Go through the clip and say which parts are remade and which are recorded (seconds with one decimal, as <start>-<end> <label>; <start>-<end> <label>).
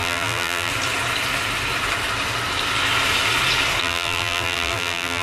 0.0-0.7 remade; 0.7-3.8 recorded; 3.8-5.2 remade